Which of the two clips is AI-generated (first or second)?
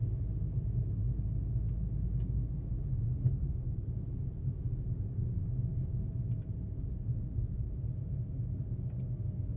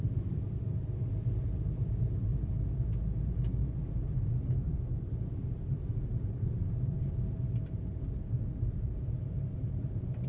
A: second